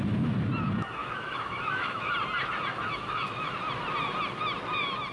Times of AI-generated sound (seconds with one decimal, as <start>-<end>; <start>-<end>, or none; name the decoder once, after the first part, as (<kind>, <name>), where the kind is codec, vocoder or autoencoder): 1.0-2.1 (autoencoder, DAC-VAE); 2.7-3.5